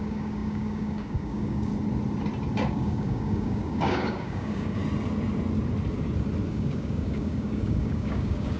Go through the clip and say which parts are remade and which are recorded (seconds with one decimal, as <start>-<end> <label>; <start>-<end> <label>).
0.0-1.7 remade; 1.7-2.7 recorded; 2.7-4.8 remade; 4.8-6.5 recorded; 6.5-8.6 remade